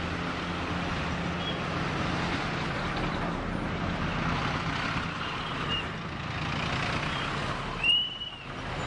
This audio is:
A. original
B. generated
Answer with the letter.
A